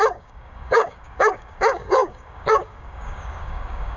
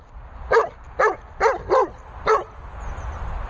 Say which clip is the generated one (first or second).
first